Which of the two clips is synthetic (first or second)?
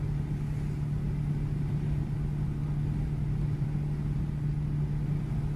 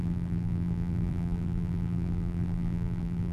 second